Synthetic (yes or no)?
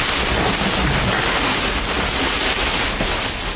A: no